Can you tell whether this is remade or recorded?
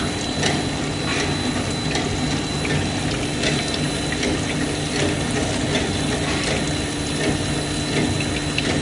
recorded